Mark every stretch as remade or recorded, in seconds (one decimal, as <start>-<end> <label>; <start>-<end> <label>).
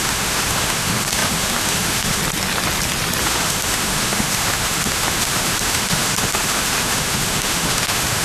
0.0-2.2 remade; 2.2-3.2 recorded; 3.2-8.2 remade